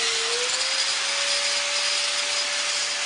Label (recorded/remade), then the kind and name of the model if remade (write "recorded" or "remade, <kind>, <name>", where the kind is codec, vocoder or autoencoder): recorded